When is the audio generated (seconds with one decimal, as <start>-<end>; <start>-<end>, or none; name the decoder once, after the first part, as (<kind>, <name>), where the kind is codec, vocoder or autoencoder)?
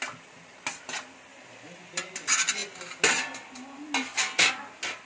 1.3-2.0 (vocoder, BigVGAN v2)